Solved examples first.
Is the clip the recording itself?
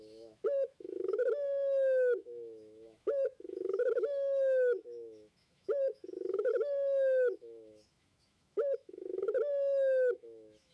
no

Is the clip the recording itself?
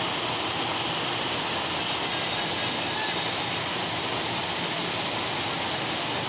yes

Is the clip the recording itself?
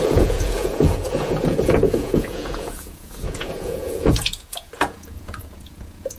no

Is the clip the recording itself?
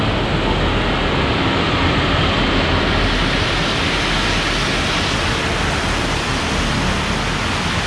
yes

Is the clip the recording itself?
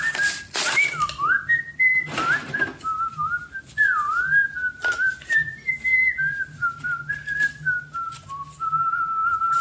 yes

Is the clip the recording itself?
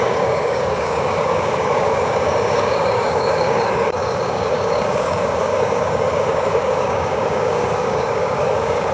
no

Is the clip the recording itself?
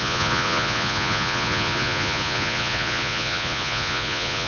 no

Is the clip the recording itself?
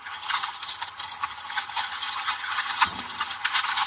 no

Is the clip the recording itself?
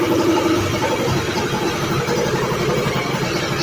yes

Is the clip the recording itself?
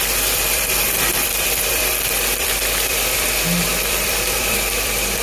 no